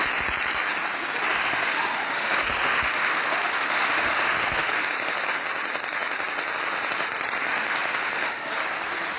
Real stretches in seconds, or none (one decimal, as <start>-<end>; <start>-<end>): 0.0-1.3; 4.9-7.5; 8.5-9.2